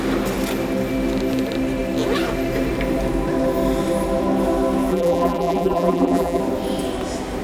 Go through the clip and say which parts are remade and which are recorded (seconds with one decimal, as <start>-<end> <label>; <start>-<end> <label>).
0.0-4.9 recorded; 4.9-6.4 remade; 6.4-7.4 recorded